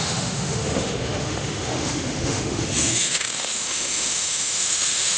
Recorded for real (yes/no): no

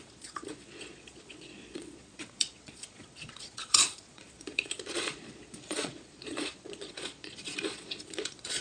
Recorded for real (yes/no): no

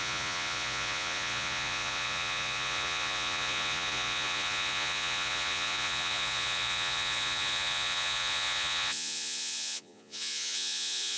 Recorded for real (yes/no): no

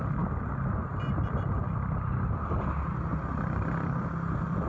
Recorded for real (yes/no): yes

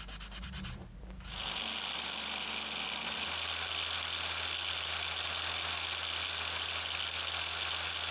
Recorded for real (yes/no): yes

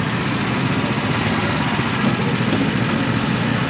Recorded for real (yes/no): yes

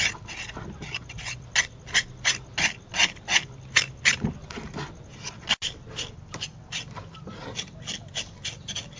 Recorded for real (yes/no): yes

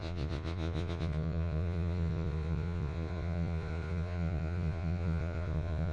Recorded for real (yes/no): no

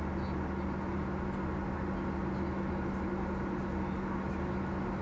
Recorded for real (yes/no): yes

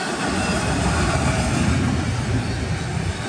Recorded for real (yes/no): yes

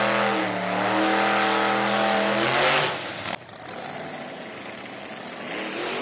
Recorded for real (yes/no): yes